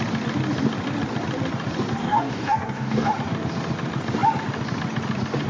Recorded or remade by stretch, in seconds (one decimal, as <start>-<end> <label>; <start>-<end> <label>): 0.0-2.0 recorded; 2.0-3.1 remade; 3.1-5.5 recorded